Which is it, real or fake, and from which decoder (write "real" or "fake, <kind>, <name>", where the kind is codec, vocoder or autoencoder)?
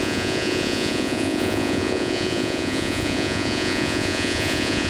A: fake, vocoder, Vocos